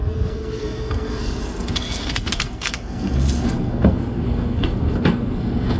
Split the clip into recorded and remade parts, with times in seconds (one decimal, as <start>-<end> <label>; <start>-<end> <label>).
0.0-5.8 remade

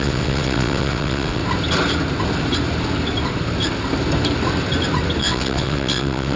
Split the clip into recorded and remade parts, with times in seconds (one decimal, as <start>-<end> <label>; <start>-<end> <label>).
0.0-1.4 remade; 1.4-5.2 recorded; 5.2-6.4 remade

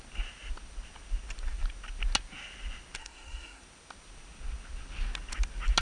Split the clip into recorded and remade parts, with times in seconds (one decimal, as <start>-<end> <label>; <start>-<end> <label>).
0.0-3.0 recorded; 3.0-3.6 remade; 3.6-5.8 recorded